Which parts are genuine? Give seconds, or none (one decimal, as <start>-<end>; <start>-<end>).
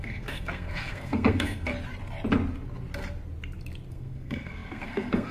1.7-3.9